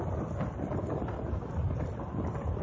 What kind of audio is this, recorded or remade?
recorded